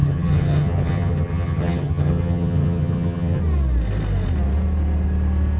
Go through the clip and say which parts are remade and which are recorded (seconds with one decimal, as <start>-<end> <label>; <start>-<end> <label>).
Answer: 0.0-3.4 remade; 3.4-5.6 recorded